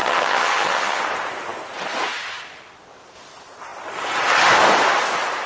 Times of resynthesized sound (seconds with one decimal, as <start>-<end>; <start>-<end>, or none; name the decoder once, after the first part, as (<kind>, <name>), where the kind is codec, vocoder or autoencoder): 0.0-1.0 (vocoder, HiFi-GAN)